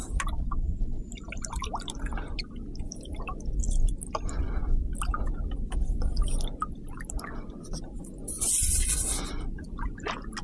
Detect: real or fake real